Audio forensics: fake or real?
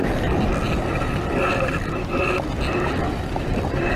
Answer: real